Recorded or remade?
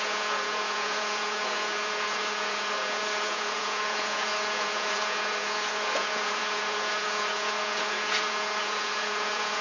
remade